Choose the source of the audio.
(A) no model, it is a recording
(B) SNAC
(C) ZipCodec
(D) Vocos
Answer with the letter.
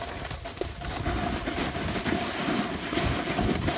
A